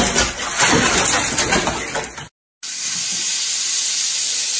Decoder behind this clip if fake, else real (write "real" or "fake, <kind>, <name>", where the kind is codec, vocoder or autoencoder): real